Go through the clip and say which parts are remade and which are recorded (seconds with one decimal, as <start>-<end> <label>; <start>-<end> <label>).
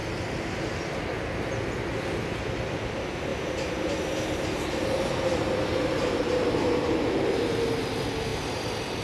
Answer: 0.0-3.3 recorded; 3.3-7.3 remade; 7.3-9.0 recorded